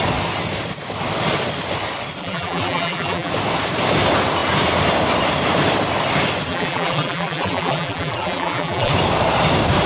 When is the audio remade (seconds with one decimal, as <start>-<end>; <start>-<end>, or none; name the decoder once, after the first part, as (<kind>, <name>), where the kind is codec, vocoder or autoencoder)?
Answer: 2.2-3.3 (vocoder, BigVGAN v2); 6.5-8.9